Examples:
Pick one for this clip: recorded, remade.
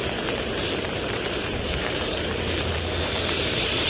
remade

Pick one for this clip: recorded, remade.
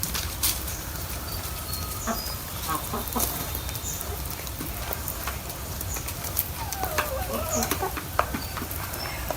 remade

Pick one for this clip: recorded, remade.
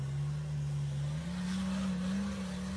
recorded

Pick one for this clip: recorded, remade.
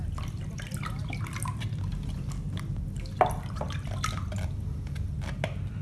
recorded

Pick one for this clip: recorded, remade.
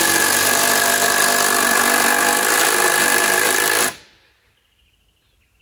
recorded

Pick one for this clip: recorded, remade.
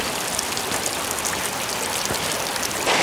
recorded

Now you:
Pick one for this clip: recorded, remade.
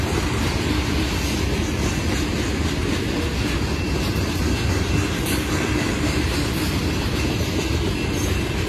recorded